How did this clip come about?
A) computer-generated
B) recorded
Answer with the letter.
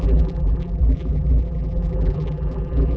A